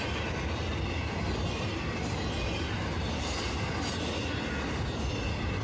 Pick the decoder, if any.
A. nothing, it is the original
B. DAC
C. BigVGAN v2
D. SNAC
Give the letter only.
A